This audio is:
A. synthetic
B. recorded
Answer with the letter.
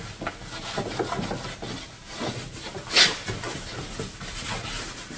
B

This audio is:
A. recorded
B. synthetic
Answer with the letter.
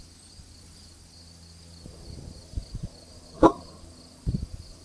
A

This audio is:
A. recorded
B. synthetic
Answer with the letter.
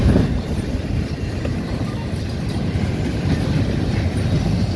A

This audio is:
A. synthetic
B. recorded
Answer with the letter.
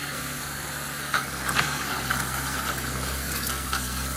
A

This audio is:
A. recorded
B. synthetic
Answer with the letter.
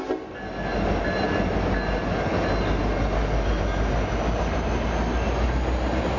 A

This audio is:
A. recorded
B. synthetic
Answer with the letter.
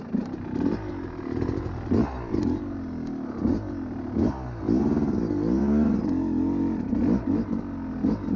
A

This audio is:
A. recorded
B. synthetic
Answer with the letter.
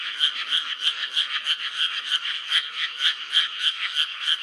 B